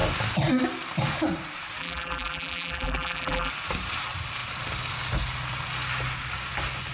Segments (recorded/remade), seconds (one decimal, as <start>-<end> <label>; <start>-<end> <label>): 0.0-1.8 recorded; 1.8-3.5 remade; 3.5-6.9 recorded